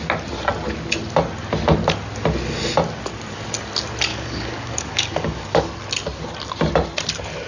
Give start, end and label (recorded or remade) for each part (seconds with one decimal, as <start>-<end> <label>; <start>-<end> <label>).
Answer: 0.0-4.1 recorded; 4.1-5.6 remade; 5.6-7.5 recorded